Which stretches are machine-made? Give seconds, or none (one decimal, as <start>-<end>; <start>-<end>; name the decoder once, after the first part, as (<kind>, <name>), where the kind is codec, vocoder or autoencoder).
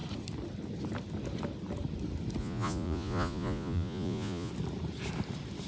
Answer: 2.4-4.5 (vocoder, Vocos)